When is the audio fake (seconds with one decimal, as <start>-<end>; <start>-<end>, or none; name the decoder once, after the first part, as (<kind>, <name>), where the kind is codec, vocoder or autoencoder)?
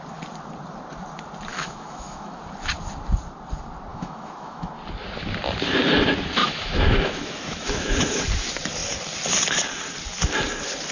1.5-2.4 (autoencoder, DAC-VAE); 3.9-4.7; 6.4-8.2